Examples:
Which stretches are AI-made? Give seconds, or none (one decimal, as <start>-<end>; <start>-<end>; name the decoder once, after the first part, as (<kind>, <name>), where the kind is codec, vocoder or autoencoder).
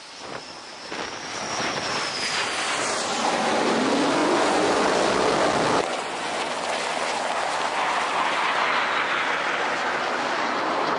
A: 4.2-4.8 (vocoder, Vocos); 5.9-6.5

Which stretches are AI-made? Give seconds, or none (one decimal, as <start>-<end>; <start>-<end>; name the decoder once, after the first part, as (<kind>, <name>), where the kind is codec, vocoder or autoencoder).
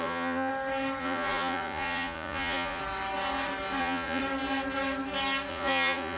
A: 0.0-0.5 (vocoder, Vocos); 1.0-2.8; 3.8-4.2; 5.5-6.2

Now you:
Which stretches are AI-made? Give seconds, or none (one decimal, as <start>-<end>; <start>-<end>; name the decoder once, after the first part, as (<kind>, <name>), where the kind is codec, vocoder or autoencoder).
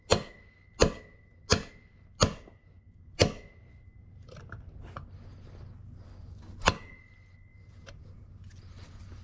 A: 7.5-8.0 (vocoder, BigVGAN v2)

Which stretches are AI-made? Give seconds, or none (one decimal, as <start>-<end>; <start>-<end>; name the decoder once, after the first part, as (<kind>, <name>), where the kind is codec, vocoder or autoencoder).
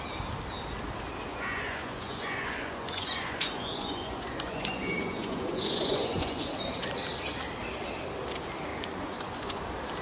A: 1.3-6.5 (vocoder, Vocos); 8.7-9.6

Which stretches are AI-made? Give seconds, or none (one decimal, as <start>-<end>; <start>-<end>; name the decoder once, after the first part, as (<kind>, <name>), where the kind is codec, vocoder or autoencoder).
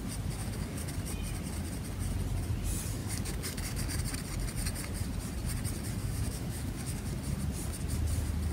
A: 0.4-0.9 (codec, DAC); 3.0-4.0; 6.0-7.1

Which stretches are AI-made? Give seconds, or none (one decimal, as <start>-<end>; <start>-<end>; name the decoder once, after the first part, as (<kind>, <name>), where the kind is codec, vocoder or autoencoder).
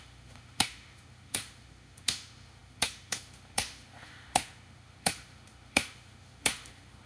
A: 0.0-7.1 (autoencoder, DAC-VAE)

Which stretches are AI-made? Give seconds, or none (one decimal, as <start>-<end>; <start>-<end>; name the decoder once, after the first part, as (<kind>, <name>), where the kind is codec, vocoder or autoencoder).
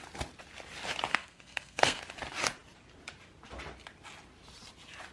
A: 1.1-2.0 (codec, SNAC)